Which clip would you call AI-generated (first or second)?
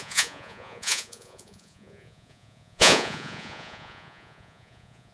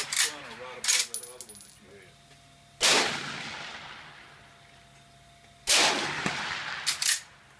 first